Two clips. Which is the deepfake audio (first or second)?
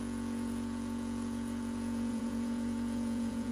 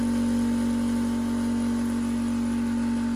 first